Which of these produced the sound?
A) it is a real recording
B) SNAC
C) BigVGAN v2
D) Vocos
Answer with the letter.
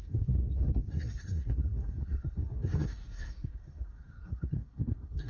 B